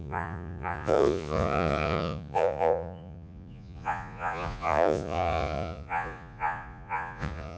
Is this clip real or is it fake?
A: fake